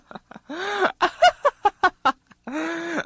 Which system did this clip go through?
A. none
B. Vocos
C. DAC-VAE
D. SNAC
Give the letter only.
A